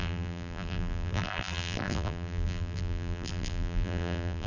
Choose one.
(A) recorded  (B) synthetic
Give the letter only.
B